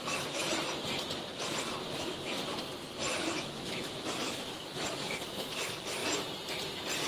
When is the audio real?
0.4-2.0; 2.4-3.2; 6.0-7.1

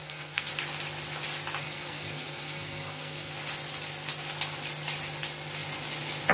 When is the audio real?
0.5-1.6; 3.3-6.3

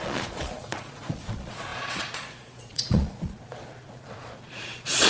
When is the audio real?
none

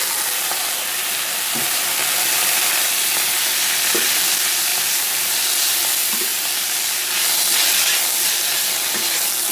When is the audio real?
0.0-4.7; 5.3-6.3; 7.2-9.5

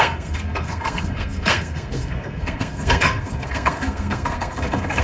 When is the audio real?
none

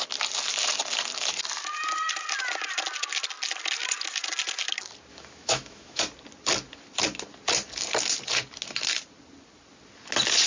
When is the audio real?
0.0-5.1; 6.0-10.5

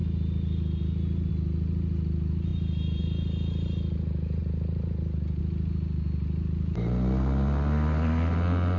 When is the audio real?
0.0-2.5; 3.0-4.4; 5.4-8.8